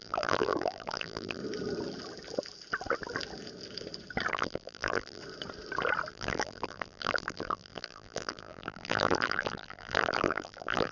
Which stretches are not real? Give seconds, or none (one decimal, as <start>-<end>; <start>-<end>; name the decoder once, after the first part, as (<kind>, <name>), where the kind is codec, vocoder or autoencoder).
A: 0.0-1.4 (vocoder, BigVGAN v2); 4.3-5.2; 6.1-10.9